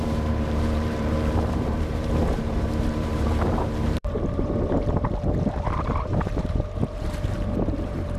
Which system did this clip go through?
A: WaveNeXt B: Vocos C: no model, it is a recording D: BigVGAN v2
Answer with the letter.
D